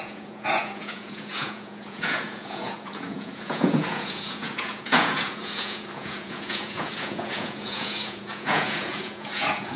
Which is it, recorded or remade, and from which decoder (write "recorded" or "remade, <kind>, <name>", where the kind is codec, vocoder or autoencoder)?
remade, vocoder, Vocos